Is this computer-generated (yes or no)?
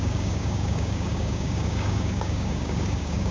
yes